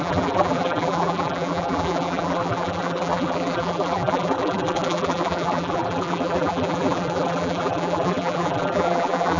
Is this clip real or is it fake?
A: fake